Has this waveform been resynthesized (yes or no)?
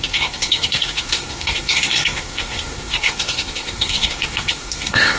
yes